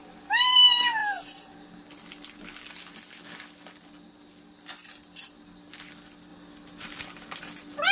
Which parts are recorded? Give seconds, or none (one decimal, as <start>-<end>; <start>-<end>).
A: 0.0-7.9